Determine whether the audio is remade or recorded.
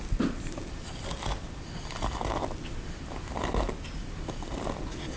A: recorded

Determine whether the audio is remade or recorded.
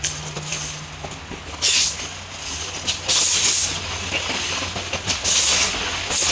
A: recorded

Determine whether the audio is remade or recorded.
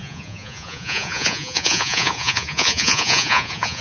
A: remade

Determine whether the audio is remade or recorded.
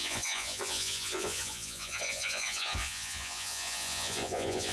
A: remade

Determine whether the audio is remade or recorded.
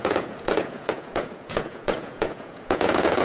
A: remade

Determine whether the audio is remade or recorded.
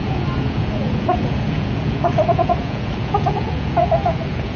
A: remade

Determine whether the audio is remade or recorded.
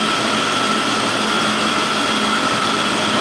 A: recorded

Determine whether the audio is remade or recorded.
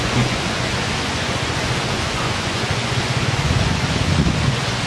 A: remade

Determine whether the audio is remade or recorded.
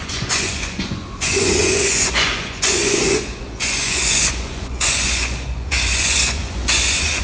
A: remade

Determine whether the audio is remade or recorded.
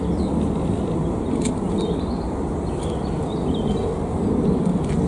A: recorded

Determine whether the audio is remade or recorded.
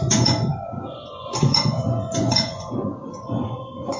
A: remade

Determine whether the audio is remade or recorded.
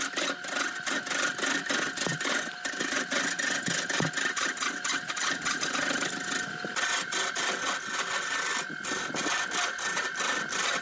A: recorded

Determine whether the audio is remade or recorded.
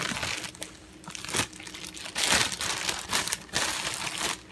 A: recorded